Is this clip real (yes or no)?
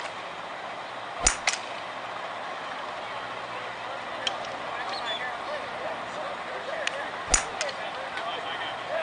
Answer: yes